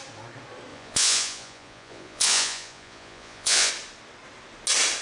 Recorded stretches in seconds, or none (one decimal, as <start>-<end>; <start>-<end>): 0.0-0.7; 3.7-5.0